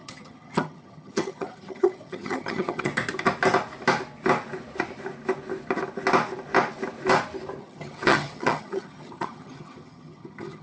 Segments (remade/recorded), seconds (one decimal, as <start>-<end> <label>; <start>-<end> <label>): 0.0-2.9 remade; 2.9-7.6 recorded; 7.6-10.6 remade

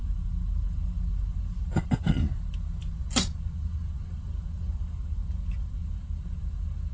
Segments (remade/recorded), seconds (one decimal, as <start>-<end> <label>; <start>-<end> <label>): 0.0-6.9 recorded

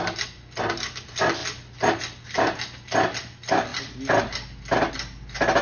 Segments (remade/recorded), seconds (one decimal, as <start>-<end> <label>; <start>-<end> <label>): 0.0-5.6 recorded